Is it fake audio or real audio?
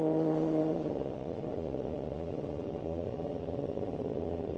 fake